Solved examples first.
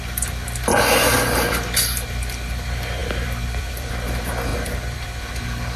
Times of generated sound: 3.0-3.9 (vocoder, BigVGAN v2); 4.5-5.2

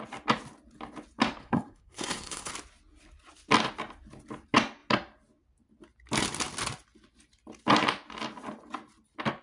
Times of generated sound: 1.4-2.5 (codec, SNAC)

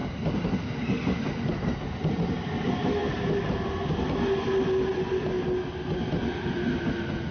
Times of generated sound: none